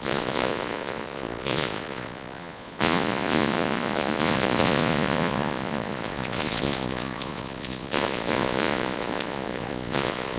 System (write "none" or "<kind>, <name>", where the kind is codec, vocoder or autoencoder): vocoder, Vocos